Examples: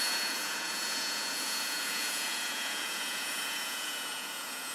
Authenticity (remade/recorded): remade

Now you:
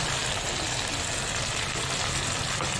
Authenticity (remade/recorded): recorded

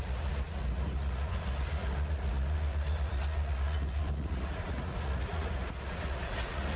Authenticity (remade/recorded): remade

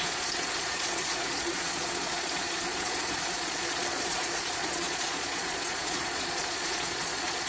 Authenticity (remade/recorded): remade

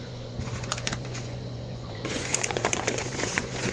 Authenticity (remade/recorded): remade